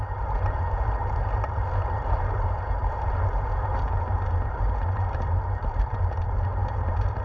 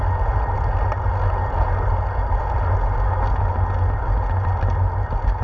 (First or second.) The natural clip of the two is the second